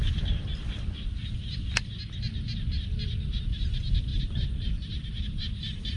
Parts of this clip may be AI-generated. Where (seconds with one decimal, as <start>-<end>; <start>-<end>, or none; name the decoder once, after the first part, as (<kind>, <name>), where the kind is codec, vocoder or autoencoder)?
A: 4.1-5.1 (vocoder, BigVGAN v2)